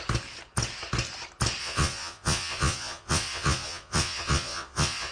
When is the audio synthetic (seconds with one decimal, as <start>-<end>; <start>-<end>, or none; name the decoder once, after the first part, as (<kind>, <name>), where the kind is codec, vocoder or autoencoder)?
1.6-5.1 (vocoder, Vocos)